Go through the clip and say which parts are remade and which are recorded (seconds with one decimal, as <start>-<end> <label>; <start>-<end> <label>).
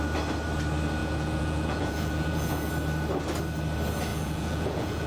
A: 0.0-1.0 recorded; 1.0-2.7 remade; 2.7-4.1 recorded; 4.1-5.1 remade